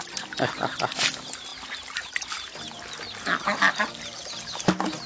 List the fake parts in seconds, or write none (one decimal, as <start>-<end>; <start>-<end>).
none